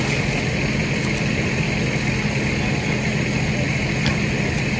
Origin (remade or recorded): recorded